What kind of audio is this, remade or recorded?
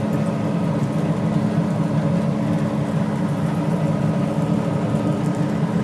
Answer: recorded